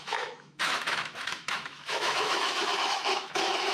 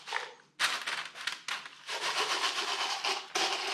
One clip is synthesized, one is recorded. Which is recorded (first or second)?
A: second